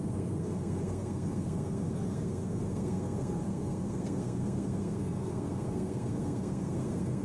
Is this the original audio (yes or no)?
no